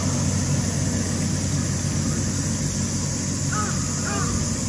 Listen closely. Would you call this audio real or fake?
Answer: real